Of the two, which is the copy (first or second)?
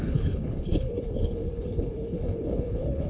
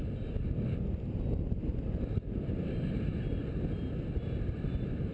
first